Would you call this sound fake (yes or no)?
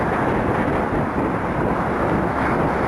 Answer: no